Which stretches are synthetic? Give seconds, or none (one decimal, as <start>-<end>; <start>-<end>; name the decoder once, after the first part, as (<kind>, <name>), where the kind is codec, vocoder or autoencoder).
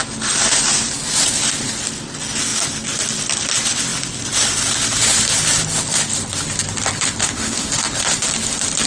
7.2-7.7 (autoencoder, DAC-VAE)